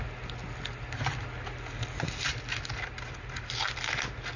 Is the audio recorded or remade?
recorded